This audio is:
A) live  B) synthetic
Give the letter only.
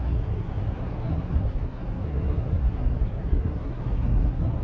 B